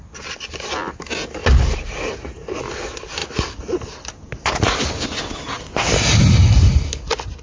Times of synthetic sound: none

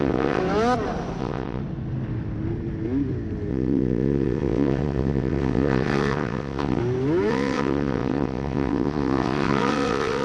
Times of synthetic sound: 0.0-0.4 (vocoder, WaveNeXt); 1.2-1.6; 3.5-6.8; 7.3-10.2